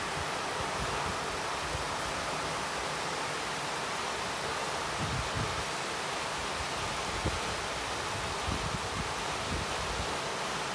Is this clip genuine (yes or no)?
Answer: yes